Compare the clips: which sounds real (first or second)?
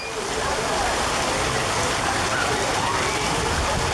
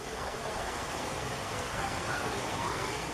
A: first